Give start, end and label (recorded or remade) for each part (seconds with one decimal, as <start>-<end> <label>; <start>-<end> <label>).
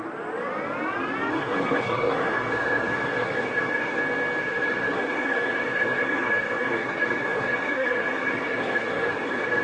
0.0-1.3 recorded; 1.3-4.0 remade; 4.0-4.4 recorded; 4.4-9.6 remade